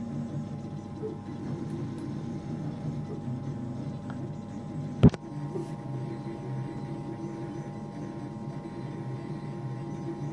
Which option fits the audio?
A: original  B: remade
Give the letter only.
A